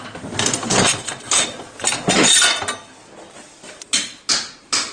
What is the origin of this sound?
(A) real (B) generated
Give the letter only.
A